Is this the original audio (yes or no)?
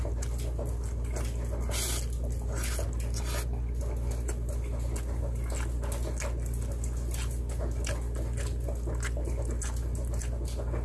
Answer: yes